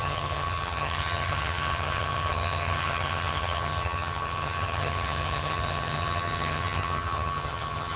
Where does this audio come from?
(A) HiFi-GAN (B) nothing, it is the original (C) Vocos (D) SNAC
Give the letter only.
A